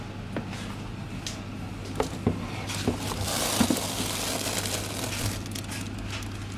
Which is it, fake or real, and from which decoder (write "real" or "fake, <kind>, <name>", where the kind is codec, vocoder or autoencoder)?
real